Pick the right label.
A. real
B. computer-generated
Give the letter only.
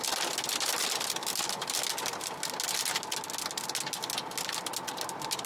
A